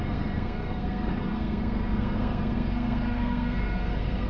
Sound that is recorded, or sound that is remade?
remade